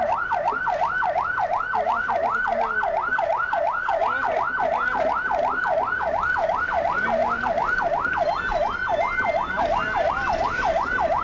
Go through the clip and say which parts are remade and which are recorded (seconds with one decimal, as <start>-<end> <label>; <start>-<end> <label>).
0.0-11.2 recorded